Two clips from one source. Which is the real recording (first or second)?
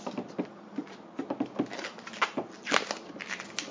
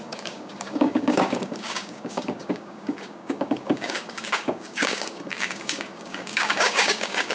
first